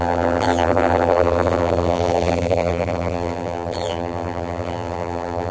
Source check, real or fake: fake